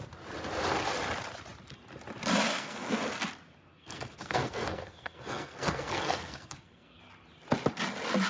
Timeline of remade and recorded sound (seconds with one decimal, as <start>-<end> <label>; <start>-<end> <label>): 0.0-2.5 recorded; 2.5-3.0 remade; 3.0-3.7 recorded; 3.7-7.0 remade; 7.0-8.3 recorded